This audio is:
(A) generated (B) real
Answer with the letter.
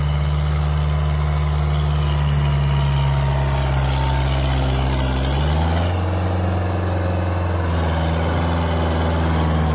B